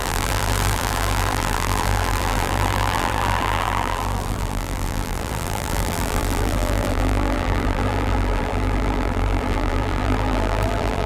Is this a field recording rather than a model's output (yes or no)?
no